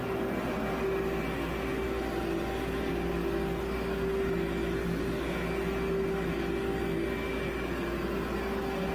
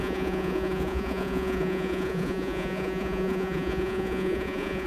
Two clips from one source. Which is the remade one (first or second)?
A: second